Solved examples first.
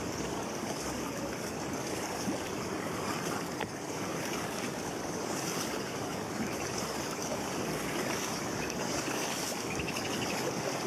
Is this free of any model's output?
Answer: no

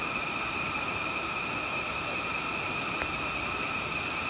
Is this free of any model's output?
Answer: yes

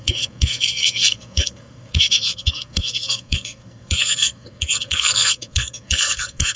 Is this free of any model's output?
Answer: no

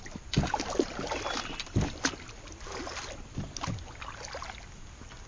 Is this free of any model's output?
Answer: yes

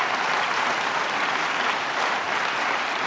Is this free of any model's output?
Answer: yes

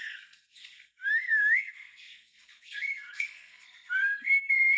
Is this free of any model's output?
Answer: no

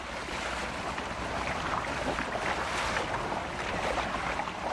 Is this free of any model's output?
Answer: no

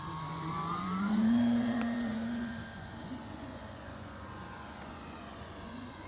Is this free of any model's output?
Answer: no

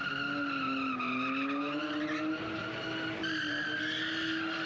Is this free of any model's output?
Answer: yes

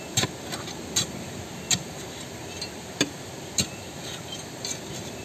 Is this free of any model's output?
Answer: yes